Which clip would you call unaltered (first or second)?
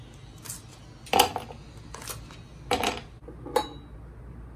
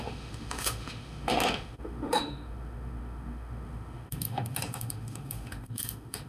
first